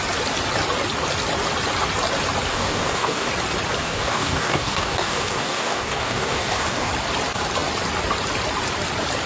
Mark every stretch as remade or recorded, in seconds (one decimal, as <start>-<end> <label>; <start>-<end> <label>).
0.0-2.5 recorded; 2.5-3.3 remade; 3.3-3.8 recorded; 3.8-6.9 remade; 6.9-9.3 recorded

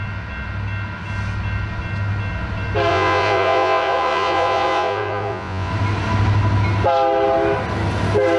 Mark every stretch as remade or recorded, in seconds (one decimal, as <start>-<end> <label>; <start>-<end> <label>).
0.0-2.9 recorded; 2.9-5.7 remade; 5.7-8.4 recorded

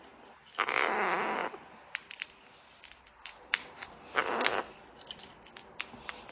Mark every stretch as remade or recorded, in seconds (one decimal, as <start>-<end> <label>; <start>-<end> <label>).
0.0-1.4 recorded; 1.4-5.2 remade; 5.2-6.3 recorded